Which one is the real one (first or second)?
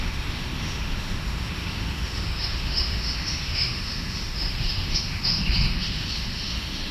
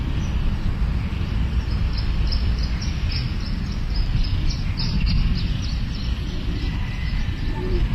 second